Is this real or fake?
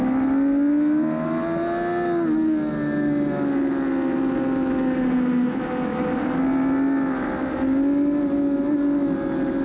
real